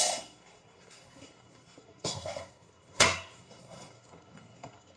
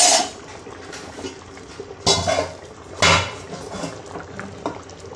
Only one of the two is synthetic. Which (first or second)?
first